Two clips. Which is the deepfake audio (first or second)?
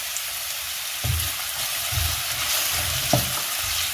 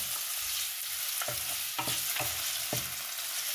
first